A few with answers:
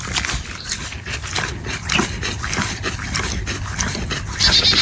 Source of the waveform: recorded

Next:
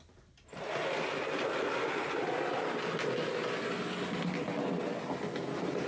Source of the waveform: recorded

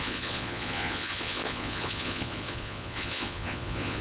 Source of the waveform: remade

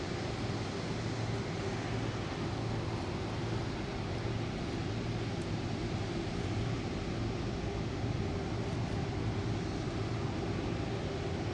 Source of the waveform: recorded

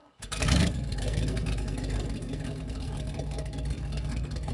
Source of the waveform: remade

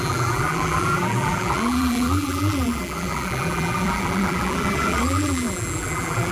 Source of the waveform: remade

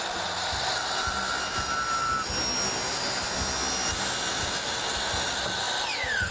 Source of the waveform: recorded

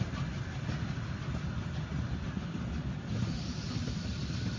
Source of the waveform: recorded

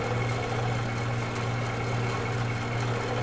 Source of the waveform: recorded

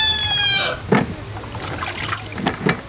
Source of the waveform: recorded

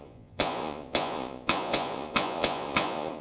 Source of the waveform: remade